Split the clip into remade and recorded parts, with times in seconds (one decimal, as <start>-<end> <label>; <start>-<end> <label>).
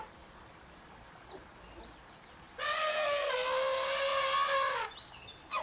0.0-2.8 recorded; 2.8-3.3 remade; 3.3-5.6 recorded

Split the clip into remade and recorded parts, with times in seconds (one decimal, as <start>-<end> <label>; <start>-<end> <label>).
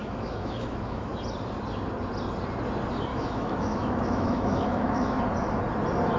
0.0-1.1 remade; 1.1-3.1 recorded; 3.1-5.2 remade; 5.2-6.2 recorded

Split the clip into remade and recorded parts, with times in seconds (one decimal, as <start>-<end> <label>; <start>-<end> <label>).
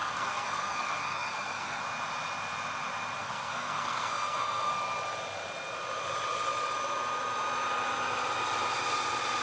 0.0-1.8 remade; 1.8-3.2 recorded; 3.2-4.7 remade; 4.7-9.4 recorded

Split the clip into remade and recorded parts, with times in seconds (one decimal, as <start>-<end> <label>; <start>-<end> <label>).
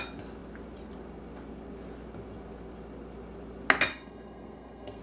0.0-3.9 recorded; 3.9-5.0 remade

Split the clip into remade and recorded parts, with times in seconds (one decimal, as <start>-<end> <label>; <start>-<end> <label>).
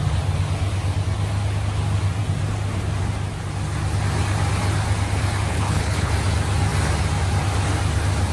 0.0-5.5 recorded; 5.5-6.1 remade; 6.1-8.3 recorded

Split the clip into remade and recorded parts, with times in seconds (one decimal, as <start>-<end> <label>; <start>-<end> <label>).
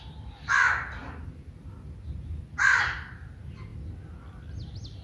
0.0-5.0 recorded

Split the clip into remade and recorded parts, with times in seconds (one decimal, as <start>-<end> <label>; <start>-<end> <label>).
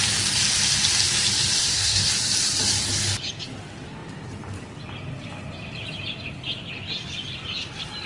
0.0-1.6 recorded; 1.6-2.1 remade; 2.1-8.1 recorded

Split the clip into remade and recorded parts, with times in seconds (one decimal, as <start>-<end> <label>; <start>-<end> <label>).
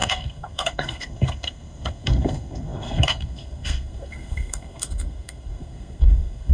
0.0-6.5 remade